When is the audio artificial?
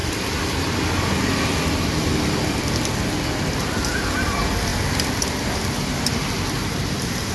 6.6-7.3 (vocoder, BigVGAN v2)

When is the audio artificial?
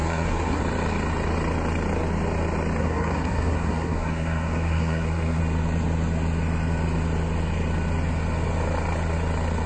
0.0-0.6 (codec, SNAC); 2.8-5.4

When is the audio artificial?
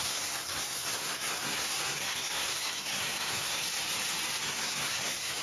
0.0-3.6 (codec, SNAC); 4.4-5.4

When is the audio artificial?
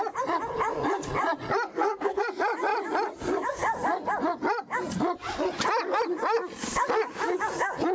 1.7-2.2 (codec, SNAC)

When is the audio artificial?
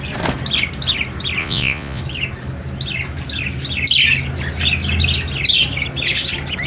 1.4-2.0 (vocoder, Vocos)